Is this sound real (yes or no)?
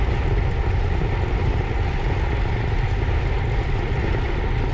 yes